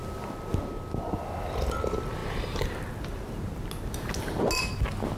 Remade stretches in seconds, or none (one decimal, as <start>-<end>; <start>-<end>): none